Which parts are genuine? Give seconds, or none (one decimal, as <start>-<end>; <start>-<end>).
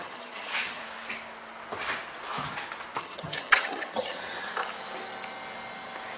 0.8-3.0; 4.5-6.2